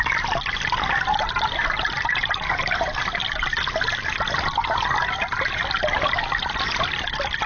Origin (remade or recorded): recorded